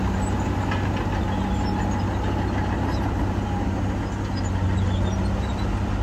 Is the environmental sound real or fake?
real